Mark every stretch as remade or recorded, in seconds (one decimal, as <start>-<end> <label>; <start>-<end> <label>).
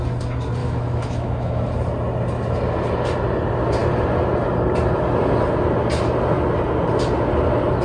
0.0-0.6 recorded; 0.6-1.6 remade; 1.6-7.8 recorded